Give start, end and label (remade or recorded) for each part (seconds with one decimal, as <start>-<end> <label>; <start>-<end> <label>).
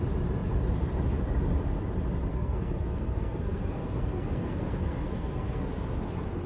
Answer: 0.0-2.3 recorded; 2.3-5.7 remade; 5.7-6.5 recorded